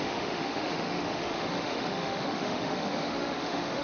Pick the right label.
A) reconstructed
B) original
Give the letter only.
A